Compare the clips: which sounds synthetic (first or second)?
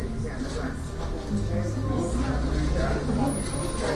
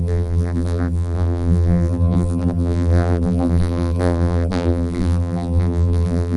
second